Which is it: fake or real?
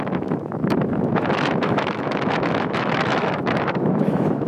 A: fake